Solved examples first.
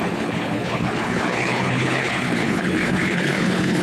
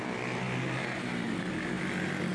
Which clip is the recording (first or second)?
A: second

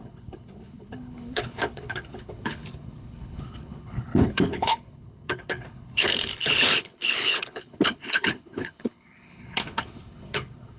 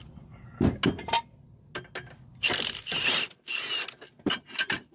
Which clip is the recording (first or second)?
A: second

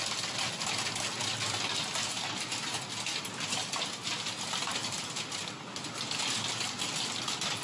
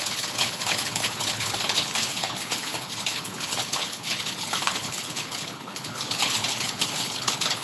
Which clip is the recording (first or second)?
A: first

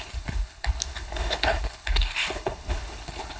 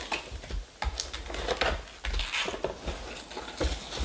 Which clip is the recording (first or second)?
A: second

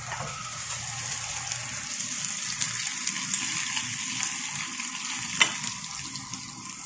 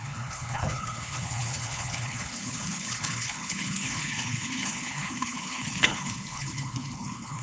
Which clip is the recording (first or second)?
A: first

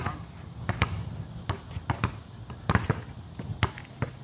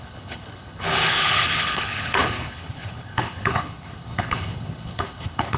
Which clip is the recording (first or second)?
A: first